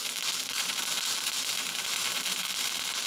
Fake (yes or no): yes